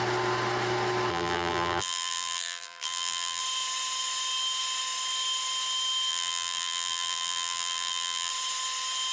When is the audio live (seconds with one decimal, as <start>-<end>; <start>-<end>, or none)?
0.0-1.1; 3.4-6.1; 8.3-9.1